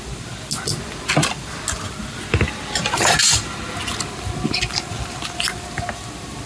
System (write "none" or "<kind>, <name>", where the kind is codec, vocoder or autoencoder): none